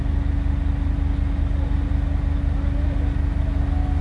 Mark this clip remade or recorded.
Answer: recorded